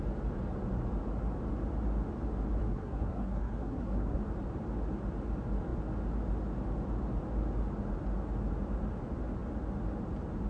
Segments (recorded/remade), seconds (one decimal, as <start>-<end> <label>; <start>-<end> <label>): 0.0-2.6 recorded; 2.6-4.2 remade; 4.2-10.5 recorded